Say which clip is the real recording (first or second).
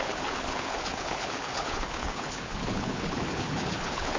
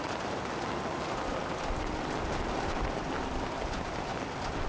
second